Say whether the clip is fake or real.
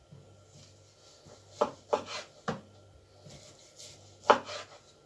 real